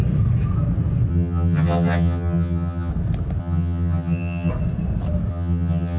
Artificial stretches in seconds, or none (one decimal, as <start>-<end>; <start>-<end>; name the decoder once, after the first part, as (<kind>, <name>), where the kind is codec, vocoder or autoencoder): 1.1-2.9 (vocoder, HiFi-GAN); 3.4-4.5; 5.3-6.0